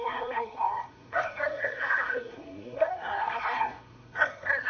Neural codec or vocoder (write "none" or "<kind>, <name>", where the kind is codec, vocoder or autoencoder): codec, SNAC